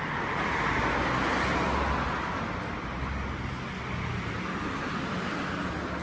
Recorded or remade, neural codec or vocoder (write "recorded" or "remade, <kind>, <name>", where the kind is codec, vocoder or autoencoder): recorded